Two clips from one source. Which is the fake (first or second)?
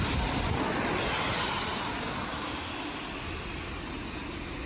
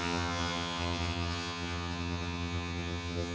second